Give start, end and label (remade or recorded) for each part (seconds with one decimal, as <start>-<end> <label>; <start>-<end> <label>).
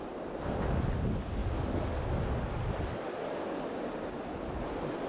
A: 0.0-5.1 recorded